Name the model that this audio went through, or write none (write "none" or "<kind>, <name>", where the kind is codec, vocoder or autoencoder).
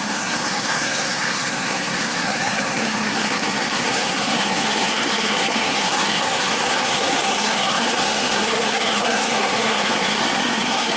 codec, SNAC